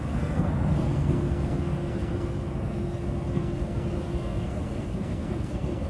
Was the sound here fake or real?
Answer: fake